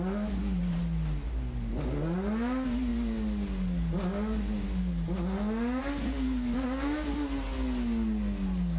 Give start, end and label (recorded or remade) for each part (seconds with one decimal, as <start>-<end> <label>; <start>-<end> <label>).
0.0-8.8 recorded